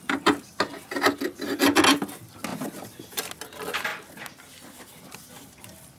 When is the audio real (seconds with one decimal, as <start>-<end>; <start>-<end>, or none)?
0.0-6.0